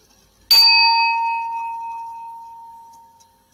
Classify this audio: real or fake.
real